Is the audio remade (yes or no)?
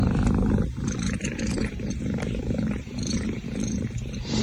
yes